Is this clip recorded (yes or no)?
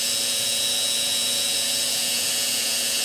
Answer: no